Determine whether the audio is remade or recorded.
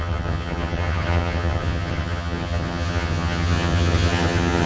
remade